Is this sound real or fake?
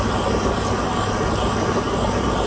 real